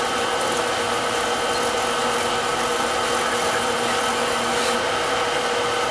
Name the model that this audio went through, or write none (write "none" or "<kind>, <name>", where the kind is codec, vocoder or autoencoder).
none